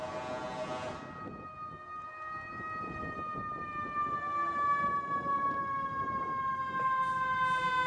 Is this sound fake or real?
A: real